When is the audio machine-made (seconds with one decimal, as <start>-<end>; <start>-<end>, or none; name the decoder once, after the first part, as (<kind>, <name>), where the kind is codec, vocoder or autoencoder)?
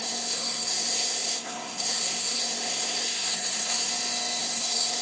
0.0-3.9 (codec, SNAC); 4.4-5.0